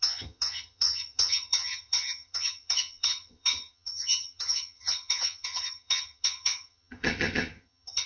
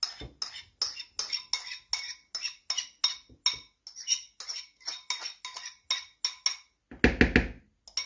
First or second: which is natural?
second